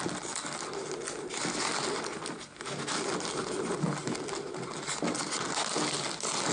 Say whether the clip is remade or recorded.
recorded